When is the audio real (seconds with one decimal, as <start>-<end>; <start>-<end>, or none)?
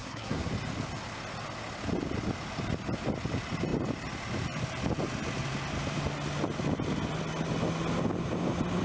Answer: 0.5-8.8